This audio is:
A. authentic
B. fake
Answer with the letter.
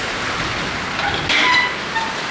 A